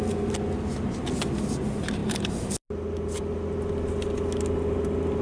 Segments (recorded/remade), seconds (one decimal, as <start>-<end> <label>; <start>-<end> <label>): 0.0-5.2 recorded